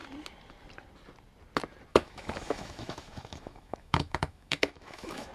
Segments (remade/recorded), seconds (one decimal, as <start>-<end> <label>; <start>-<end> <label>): 0.0-1.9 recorded; 1.9-5.3 remade